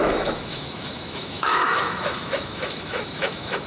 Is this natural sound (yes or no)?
no